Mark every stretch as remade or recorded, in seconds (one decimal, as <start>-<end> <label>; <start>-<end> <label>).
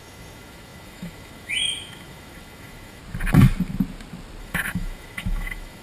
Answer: 0.0-3.0 remade; 3.0-4.4 recorded; 4.4-5.8 remade